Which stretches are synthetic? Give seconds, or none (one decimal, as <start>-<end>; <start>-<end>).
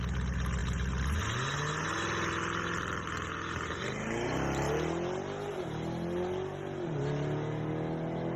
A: none